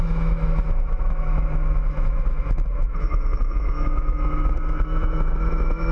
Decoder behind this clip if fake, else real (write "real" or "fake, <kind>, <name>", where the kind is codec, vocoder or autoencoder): fake, autoencoder, DAC-VAE